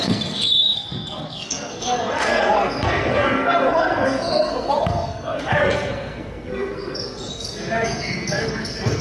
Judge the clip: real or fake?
fake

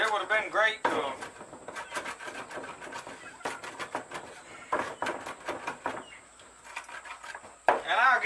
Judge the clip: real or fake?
real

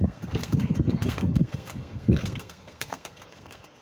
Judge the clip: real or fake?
fake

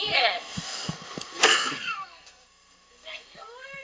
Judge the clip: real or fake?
fake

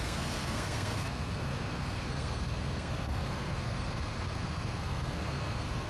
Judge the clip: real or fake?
fake